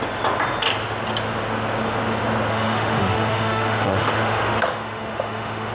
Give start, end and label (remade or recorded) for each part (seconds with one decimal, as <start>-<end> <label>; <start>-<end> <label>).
0.0-2.5 recorded; 2.5-5.7 remade